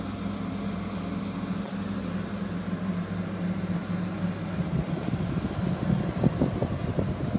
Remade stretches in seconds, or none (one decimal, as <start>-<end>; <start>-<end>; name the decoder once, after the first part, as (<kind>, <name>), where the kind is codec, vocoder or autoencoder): none